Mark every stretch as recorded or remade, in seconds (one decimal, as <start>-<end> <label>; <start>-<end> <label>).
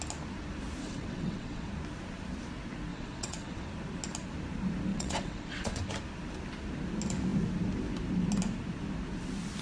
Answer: 0.0-0.8 recorded; 0.8-1.7 remade; 1.7-2.9 recorded; 2.9-3.7 remade; 3.7-4.9 recorded; 4.9-5.9 remade; 5.9-9.6 recorded